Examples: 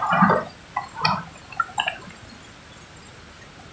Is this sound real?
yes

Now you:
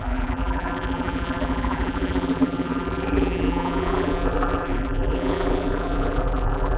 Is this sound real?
no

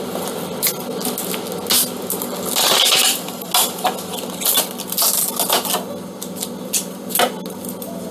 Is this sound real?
yes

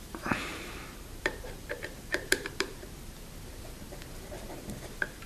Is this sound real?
no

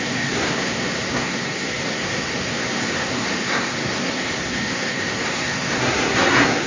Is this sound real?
no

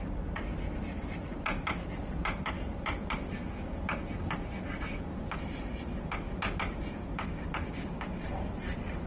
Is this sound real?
yes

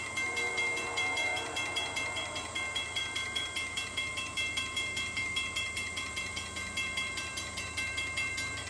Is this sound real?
no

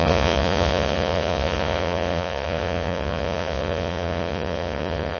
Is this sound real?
no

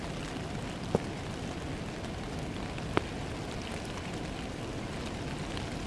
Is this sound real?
yes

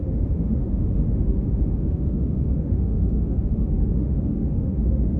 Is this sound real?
no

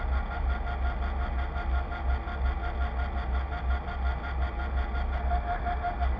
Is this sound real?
yes